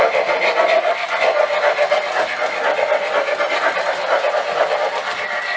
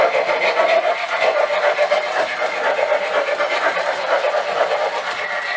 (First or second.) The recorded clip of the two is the first